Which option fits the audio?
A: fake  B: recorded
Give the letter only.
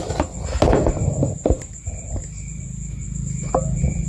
B